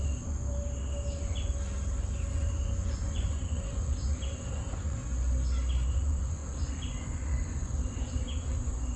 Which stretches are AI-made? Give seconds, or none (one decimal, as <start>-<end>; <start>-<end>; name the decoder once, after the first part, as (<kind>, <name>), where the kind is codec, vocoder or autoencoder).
0.0-0.4 (vocoder, Vocos); 1.1-1.5; 2.2-5.0; 5.9-9.0